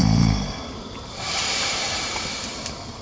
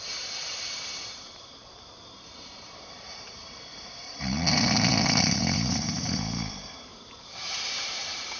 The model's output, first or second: second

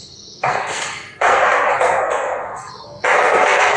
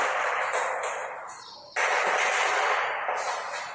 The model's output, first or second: first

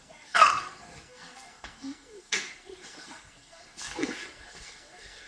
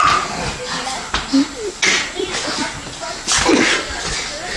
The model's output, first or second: first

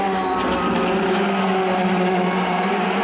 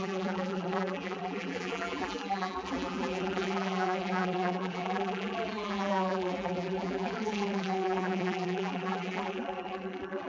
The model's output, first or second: second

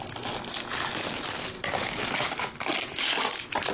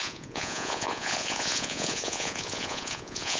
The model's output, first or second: second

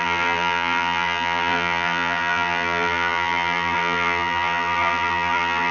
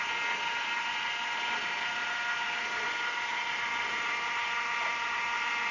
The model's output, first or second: first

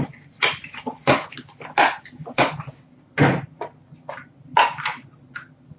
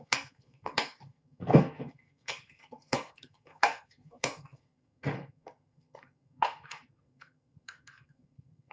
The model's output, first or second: second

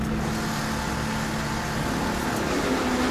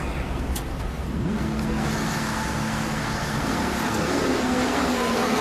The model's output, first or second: second